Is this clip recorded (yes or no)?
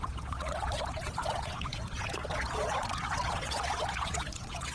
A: no